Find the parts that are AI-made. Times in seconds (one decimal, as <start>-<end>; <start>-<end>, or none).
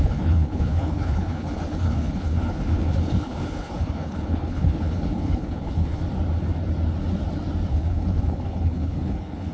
0.0-6.0; 7.7-9.5